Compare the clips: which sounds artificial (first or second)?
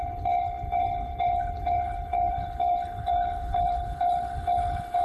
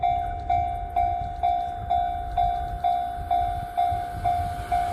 first